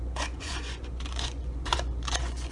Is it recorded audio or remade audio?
remade